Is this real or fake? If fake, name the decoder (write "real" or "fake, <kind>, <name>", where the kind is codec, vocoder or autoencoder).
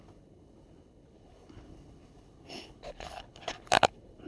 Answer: fake, codec, HILCodec